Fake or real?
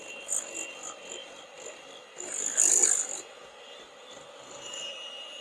real